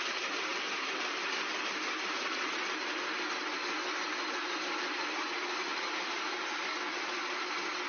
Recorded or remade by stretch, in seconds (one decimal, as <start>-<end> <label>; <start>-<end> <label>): 0.0-5.7 recorded; 5.7-6.6 remade; 6.6-7.9 recorded